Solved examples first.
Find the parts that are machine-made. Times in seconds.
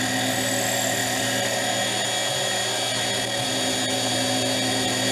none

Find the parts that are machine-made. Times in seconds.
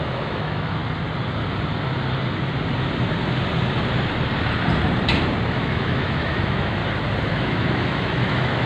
0.0-0.8; 5.5-6.8; 7.3-8.7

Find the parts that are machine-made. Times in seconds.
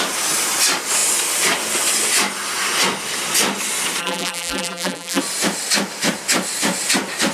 4.0-5.2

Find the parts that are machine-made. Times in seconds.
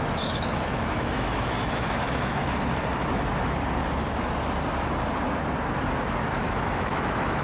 0.0-2.4; 6.3-7.4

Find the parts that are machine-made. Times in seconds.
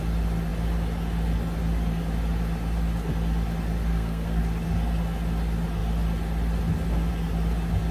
3.9-4.4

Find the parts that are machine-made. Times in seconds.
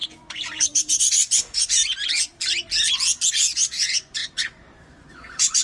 0.0-1.8; 3.3-5.6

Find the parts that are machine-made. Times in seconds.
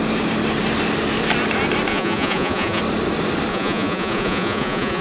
1.9-2.8; 3.5-5.0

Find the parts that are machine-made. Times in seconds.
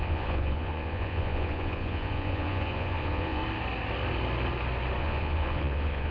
0.0-3.4; 5.0-6.1